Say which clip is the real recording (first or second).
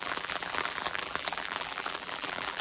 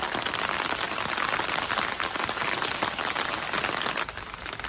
second